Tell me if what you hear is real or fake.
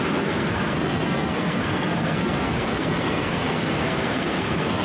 fake